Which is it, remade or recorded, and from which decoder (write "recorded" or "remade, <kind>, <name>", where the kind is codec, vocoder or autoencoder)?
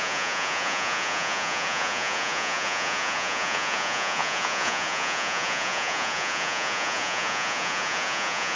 remade, vocoder, Vocos